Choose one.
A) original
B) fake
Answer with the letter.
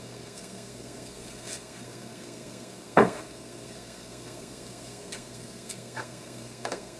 B